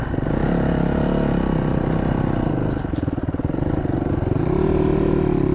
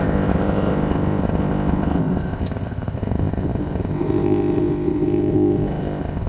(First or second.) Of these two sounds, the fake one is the second